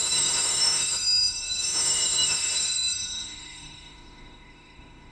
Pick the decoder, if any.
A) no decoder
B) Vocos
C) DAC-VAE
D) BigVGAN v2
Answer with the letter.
C